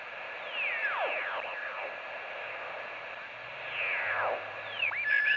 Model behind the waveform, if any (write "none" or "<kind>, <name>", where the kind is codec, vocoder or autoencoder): none